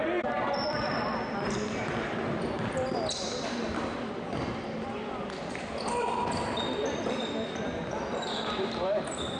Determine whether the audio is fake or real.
fake